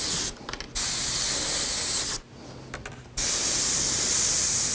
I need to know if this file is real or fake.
real